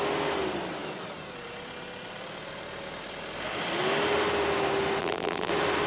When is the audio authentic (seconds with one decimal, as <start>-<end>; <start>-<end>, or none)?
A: 0.0-5.0; 5.5-5.9